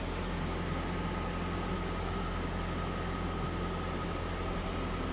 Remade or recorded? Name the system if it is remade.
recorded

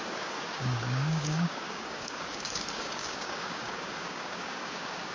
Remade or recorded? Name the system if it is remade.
remade, codec, DAC